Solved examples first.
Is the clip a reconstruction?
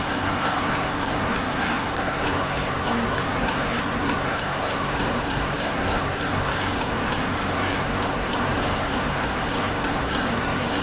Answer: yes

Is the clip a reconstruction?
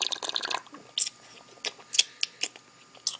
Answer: no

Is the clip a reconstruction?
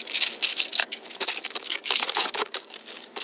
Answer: yes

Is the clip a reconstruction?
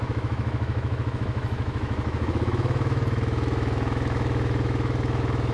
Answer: yes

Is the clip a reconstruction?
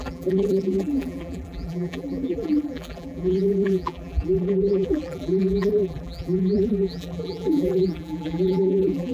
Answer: yes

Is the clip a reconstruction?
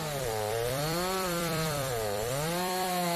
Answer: yes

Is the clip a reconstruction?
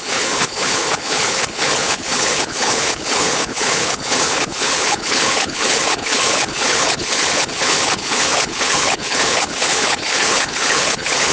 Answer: yes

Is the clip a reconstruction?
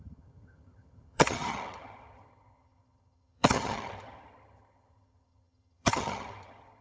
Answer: yes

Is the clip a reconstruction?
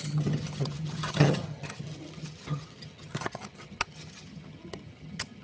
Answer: yes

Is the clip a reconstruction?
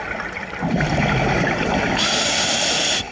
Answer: no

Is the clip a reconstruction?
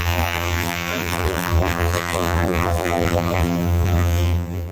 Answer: yes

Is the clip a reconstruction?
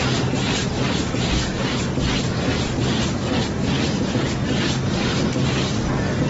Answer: no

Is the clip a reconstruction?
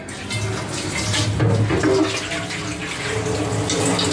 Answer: no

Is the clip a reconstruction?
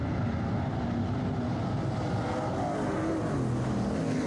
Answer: no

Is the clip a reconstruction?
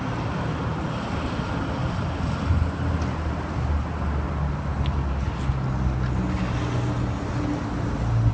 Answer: no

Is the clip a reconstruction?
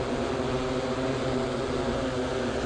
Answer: no